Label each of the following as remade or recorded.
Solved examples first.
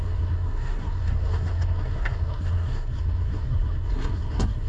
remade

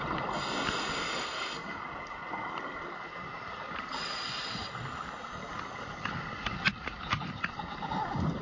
recorded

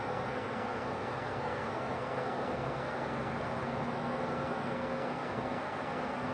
remade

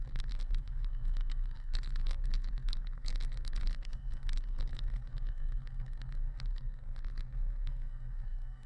remade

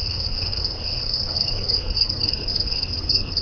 remade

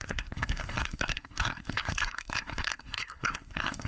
remade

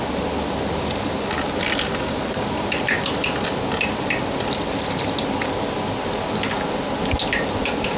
recorded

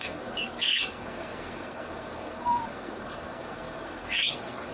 remade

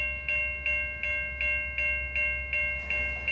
recorded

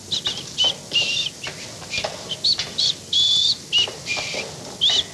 recorded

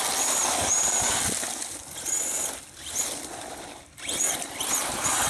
recorded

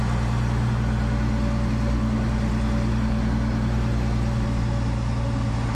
recorded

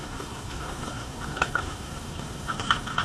remade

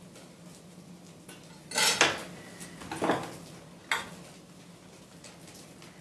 recorded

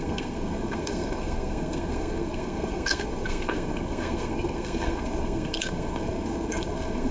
remade